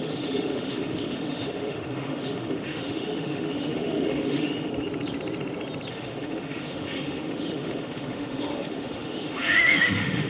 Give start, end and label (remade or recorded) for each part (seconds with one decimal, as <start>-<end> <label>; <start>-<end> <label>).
0.0-4.7 remade; 4.7-5.9 recorded; 5.9-10.3 remade